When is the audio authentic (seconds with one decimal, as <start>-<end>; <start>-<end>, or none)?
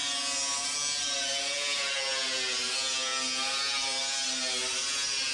0.0-5.3